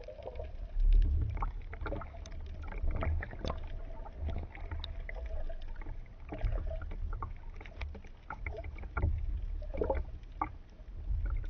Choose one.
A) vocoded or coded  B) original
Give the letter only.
B